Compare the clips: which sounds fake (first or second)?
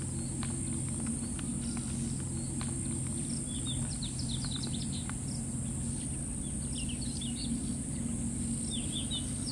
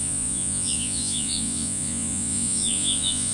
second